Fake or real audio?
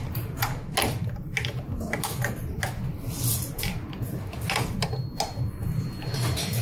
real